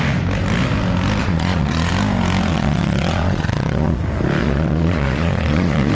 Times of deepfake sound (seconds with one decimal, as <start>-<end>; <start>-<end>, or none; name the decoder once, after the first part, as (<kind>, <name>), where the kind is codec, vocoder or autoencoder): 1.2-1.9 (vocoder, Vocos); 2.5-4.0; 4.4-5.9